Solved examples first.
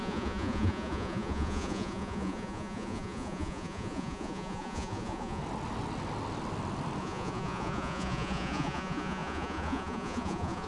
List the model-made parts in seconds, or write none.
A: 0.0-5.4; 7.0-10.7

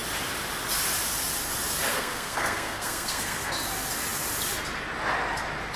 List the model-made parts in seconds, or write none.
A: 1.9-3.5

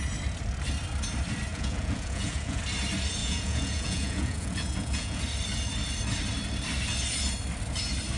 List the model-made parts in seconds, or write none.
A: 1.5-2.6; 3.2-5.2

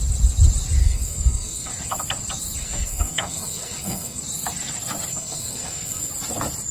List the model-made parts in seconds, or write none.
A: 0.8-1.7; 2.6-4.2; 5.1-6.1

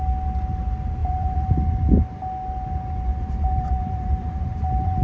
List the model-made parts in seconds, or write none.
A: 1.0-1.6; 3.1-5.0